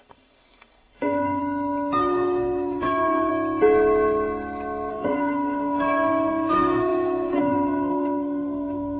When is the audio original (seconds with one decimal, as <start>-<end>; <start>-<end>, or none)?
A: 1.4-2.0; 3.3-4.9